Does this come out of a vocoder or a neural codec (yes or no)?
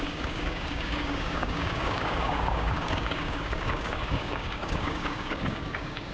yes